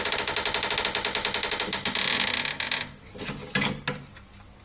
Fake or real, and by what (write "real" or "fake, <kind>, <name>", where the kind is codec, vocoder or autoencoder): real